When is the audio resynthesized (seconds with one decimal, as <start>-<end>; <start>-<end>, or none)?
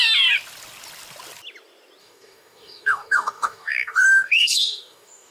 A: 2.0-5.3